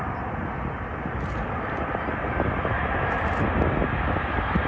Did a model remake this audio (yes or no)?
no